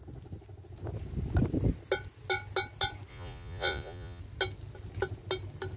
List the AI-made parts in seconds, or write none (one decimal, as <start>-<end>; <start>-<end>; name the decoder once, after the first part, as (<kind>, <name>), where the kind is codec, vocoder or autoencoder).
3.1-4.2 (vocoder, Vocos)